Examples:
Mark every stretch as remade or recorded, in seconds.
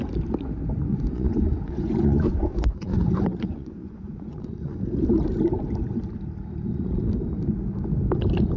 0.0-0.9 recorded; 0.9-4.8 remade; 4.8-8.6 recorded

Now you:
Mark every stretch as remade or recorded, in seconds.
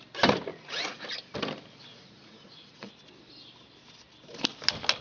0.0-0.5 recorded; 0.5-1.0 remade; 1.0-1.9 recorded; 1.9-2.9 remade; 2.9-5.0 recorded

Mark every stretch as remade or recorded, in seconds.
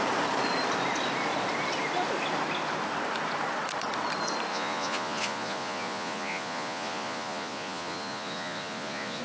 0.0-4.5 recorded; 4.5-9.2 remade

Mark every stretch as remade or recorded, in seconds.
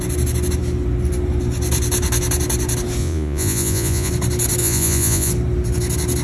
0.0-3.0 recorded; 3.0-4.1 remade; 4.1-4.6 recorded; 4.6-5.3 remade; 5.3-6.2 recorded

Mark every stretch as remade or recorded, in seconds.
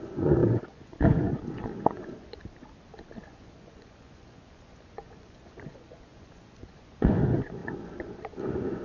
0.0-2.4 remade; 2.4-3.2 recorded; 3.2-8.8 remade